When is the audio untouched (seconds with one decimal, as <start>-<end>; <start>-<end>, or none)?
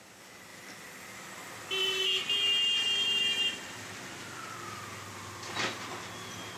0.0-6.6